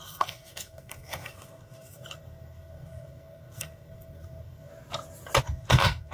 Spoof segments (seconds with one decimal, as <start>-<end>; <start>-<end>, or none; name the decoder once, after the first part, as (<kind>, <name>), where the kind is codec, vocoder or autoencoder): 0.0-4.7 (codec, SNAC); 5.4-6.1